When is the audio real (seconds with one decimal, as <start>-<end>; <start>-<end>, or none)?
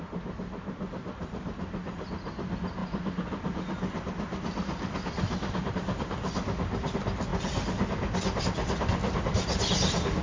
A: 0.0-10.2